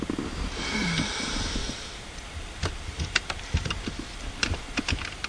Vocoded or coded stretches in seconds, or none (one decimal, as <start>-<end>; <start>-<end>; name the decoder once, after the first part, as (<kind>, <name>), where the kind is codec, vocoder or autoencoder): 1.6-4.8 (vocoder, BigVGAN v2)